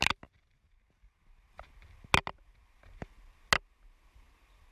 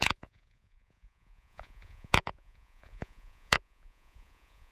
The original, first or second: first